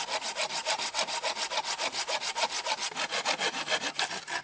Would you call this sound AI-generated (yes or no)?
no